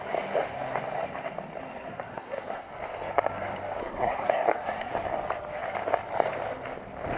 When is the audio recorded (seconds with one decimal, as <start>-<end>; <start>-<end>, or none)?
0.0-2.1; 2.7-3.8; 4.9-7.2